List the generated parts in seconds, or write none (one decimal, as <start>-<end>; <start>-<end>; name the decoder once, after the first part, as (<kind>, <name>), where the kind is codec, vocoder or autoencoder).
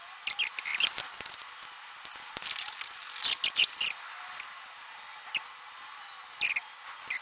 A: none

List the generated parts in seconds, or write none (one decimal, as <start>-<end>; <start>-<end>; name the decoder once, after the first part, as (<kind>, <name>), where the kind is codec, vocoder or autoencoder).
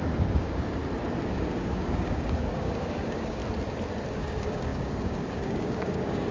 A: 0.0-0.8 (codec, DAC); 1.3-3.4; 4.1-6.3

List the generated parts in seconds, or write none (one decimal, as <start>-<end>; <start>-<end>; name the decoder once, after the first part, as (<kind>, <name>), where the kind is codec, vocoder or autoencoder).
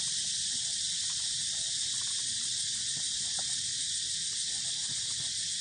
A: none